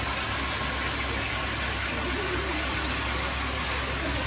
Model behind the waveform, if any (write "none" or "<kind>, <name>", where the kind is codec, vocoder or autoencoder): none